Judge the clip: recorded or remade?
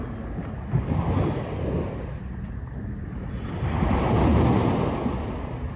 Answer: recorded